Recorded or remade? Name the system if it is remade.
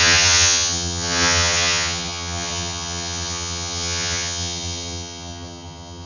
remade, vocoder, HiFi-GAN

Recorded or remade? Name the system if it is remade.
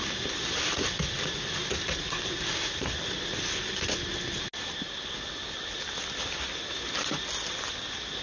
recorded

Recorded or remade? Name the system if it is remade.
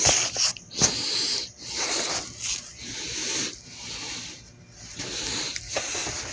recorded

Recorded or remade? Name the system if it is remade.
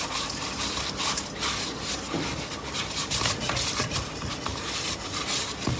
recorded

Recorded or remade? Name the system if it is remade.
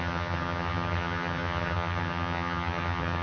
remade, vocoder, HiFi-GAN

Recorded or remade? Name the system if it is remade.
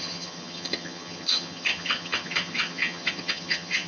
remade, vocoder, HiFi-GAN